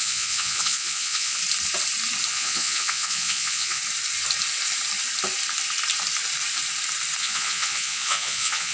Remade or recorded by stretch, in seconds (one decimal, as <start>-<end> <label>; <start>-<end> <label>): 0.0-1.4 remade; 1.4-2.3 recorded; 2.3-3.8 remade; 3.8-7.2 recorded; 7.2-8.7 remade